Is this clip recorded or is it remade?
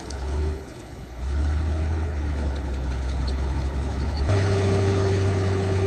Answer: remade